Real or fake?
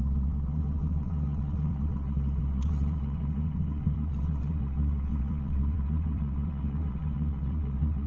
fake